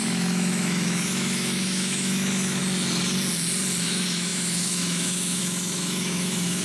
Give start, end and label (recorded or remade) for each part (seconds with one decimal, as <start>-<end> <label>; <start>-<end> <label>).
0.0-2.6 remade; 2.6-3.8 recorded; 3.8-6.6 remade